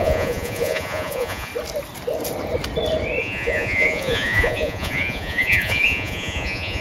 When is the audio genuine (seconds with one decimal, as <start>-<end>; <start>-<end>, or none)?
1.5-3.2